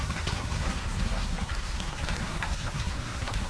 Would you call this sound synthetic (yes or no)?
yes